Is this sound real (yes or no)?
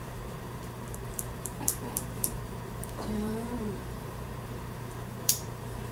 no